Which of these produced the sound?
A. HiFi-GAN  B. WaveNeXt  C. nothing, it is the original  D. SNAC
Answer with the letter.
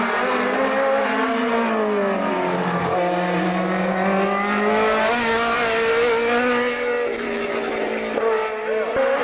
C